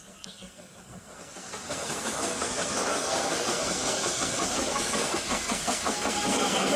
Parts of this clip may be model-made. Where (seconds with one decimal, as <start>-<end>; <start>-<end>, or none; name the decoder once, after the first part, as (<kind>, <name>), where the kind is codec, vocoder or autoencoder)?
0.0-6.8 (codec, SNAC)